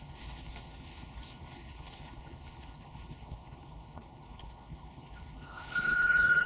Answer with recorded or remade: remade